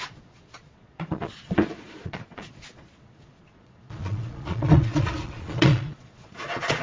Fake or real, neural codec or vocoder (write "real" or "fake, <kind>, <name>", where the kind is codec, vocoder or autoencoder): fake, vocoder, Vocos